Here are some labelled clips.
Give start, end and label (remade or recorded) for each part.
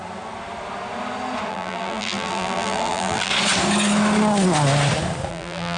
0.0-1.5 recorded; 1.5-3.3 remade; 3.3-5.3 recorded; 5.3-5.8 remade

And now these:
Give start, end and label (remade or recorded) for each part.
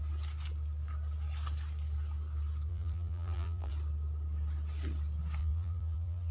0.0-2.7 recorded; 2.7-3.7 remade; 3.7-5.4 recorded; 5.4-6.3 remade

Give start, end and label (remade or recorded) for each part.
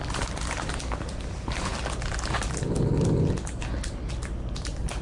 0.0-1.7 remade; 1.7-4.1 recorded; 4.1-5.0 remade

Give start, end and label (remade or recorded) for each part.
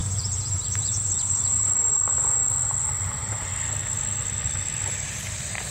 0.0-2.4 remade; 2.4-3.0 recorded; 3.0-3.5 remade; 3.5-5.7 recorded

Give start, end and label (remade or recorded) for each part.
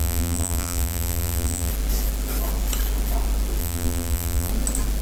0.0-1.7 remade; 1.7-3.6 recorded; 3.6-4.5 remade; 4.5-5.0 recorded